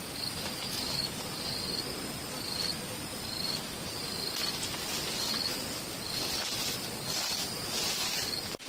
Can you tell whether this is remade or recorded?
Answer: recorded